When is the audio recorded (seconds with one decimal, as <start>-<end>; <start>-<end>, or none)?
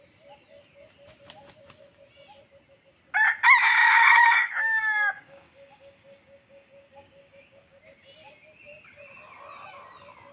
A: 0.0-3.8; 7.8-10.3